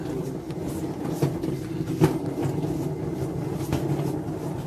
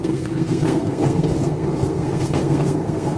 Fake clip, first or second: second